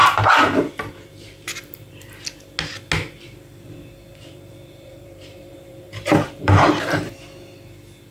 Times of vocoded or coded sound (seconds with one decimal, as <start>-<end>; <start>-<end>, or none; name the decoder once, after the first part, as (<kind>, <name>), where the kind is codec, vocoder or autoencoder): 0.0-1.9 (vocoder, BigVGAN v2); 4.1-7.1